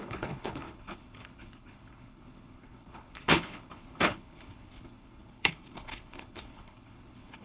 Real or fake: fake